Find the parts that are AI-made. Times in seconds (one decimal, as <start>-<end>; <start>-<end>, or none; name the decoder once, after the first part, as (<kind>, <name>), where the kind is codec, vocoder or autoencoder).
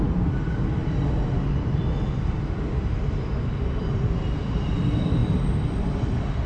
none